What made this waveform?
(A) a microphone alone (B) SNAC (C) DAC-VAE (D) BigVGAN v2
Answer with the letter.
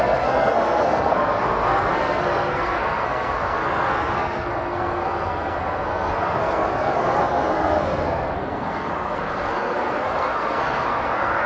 B